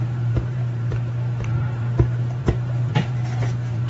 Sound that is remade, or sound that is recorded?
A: remade